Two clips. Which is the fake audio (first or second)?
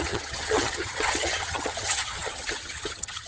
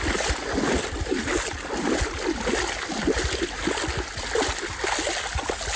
first